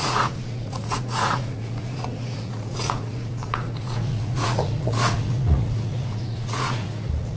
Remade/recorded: remade